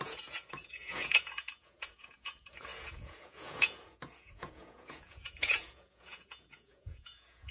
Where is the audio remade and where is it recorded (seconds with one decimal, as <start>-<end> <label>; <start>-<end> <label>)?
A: 0.0-7.5 remade